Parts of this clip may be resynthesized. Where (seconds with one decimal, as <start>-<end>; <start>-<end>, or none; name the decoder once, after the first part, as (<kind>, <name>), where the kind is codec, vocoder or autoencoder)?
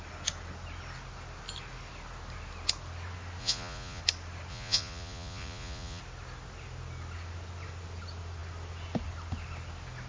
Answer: 3.4-4.0 (vocoder, Vocos); 4.5-6.0